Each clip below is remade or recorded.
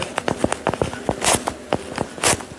recorded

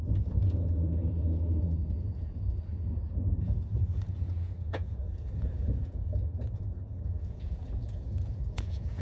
remade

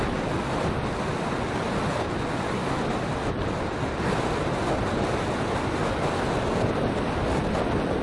recorded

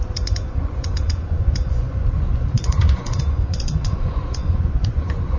remade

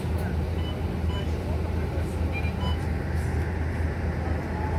recorded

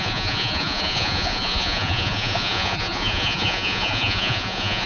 remade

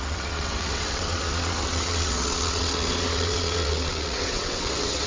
remade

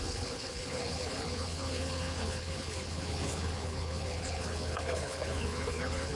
remade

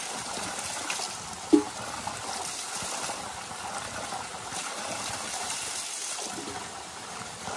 recorded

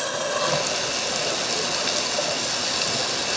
recorded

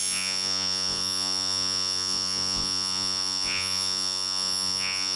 remade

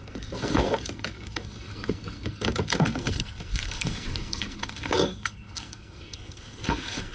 remade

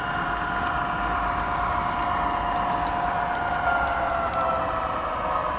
recorded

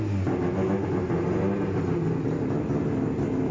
recorded